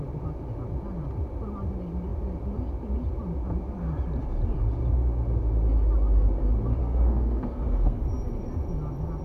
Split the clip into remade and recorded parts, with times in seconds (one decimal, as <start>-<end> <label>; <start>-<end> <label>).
0.0-6.8 recorded; 6.8-8.0 remade; 8.0-9.2 recorded